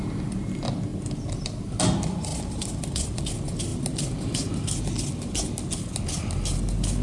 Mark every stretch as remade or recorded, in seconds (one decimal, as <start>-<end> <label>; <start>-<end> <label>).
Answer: 0.0-2.3 recorded; 2.3-3.2 remade; 3.2-7.0 recorded